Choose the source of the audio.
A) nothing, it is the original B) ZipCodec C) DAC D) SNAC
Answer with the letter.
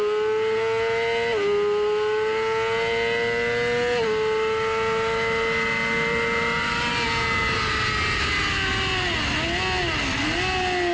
A